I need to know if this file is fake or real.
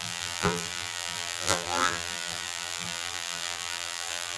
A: fake